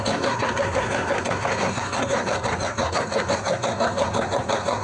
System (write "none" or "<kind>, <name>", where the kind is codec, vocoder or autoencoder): codec, SNAC